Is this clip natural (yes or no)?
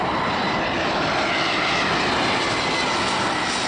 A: yes